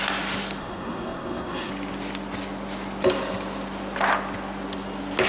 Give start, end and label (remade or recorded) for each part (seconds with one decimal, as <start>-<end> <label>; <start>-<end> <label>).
0.0-0.6 recorded; 0.6-1.7 remade; 1.7-5.3 recorded

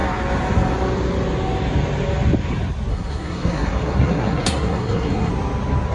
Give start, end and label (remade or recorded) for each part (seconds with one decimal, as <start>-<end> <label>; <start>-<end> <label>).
0.0-2.9 recorded; 2.9-5.3 remade; 5.3-5.9 recorded

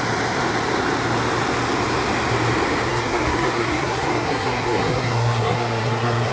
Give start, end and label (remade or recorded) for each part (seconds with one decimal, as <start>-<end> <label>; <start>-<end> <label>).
0.0-2.9 recorded; 2.9-6.3 remade

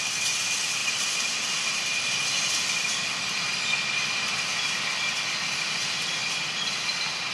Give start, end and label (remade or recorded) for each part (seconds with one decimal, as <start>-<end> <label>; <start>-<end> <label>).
0.0-7.3 recorded

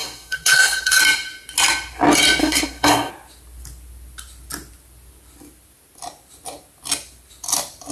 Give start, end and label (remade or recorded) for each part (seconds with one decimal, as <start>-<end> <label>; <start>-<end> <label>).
0.0-1.0 remade; 1.0-2.4 recorded; 2.4-3.1 remade; 3.1-7.9 recorded

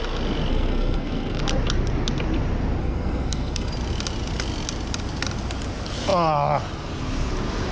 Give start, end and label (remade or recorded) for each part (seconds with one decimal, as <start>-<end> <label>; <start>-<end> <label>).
0.0-0.5 recorded; 0.5-1.4 remade; 1.4-2.8 recorded; 2.8-3.7 remade; 3.7-7.7 recorded

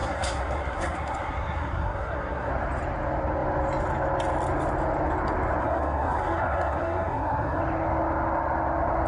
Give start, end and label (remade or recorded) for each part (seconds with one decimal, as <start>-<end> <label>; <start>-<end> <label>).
0.0-2.5 remade; 2.5-5.6 recorded; 5.6-7.6 remade; 7.6-9.1 recorded